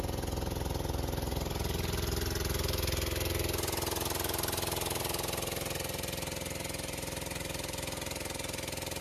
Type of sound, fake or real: real